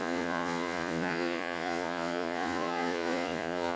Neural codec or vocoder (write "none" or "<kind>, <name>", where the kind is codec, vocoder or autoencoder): vocoder, Vocos